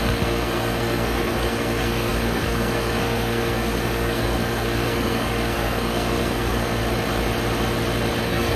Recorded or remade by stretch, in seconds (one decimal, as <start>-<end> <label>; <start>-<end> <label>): 0.0-6.8 remade; 6.8-8.2 recorded; 8.2-8.6 remade